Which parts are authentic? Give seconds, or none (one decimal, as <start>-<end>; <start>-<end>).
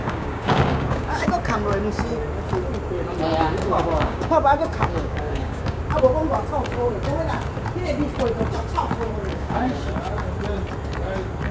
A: 1.3-3.6; 5.8-9.3; 9.8-11.5